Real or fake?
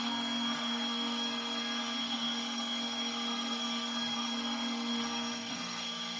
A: fake